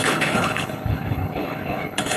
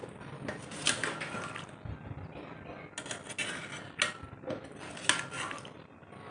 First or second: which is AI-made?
first